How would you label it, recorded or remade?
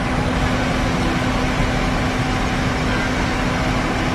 recorded